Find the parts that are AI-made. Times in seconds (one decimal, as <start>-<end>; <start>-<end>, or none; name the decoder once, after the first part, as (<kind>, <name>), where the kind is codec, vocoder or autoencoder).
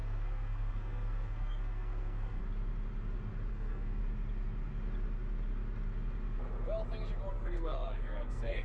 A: 0.0-2.4 (codec, SNAC); 3.5-4.0; 7.3-8.6